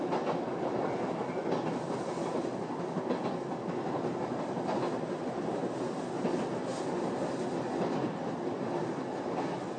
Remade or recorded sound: recorded